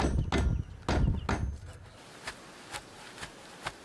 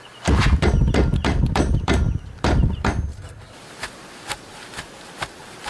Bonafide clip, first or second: first